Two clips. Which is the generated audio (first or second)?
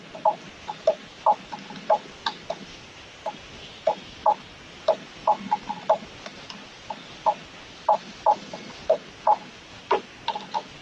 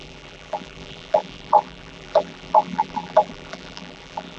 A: second